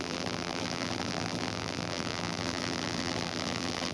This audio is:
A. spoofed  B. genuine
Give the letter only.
A